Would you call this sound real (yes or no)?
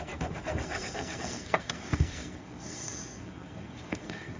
no